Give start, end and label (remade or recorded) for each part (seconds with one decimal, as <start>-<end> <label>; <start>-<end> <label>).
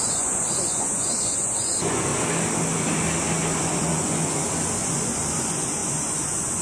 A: 0.0-2.1 remade; 2.1-3.6 recorded; 3.6-6.6 remade